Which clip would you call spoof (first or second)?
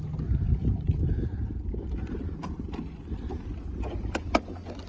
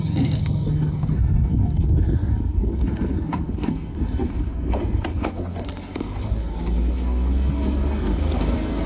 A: second